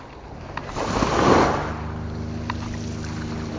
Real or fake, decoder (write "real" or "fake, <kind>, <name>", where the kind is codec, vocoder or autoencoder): real